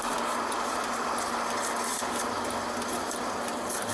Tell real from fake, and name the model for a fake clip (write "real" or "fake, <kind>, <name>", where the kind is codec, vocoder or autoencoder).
real